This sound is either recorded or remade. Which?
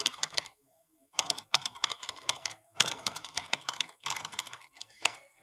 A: remade